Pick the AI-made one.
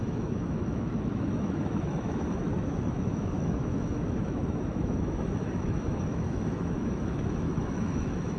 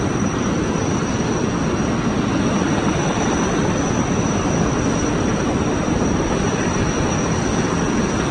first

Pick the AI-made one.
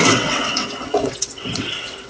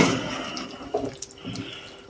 first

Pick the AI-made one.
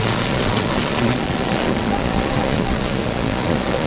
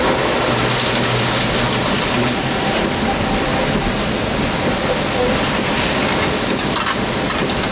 first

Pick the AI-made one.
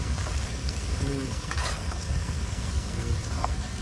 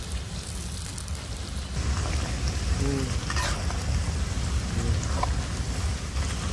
first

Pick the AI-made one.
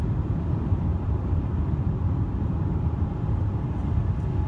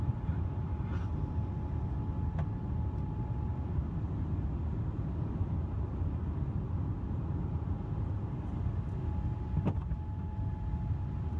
first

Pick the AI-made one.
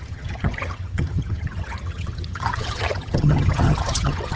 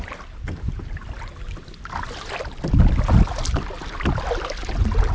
first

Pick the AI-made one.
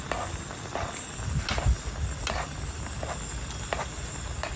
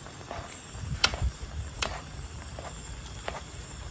second